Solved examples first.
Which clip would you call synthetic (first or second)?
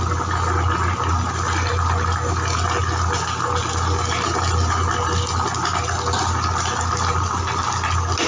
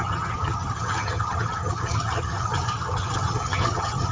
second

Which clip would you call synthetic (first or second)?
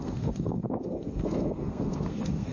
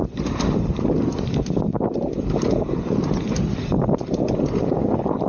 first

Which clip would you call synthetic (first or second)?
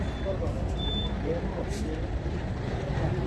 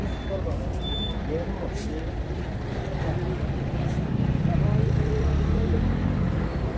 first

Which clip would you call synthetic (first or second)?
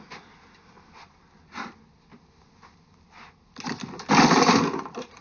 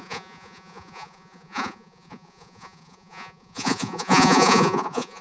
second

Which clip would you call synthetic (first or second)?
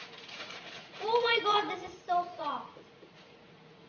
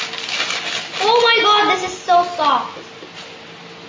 first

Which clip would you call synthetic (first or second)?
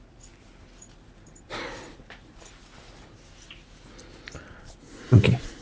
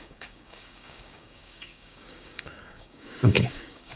second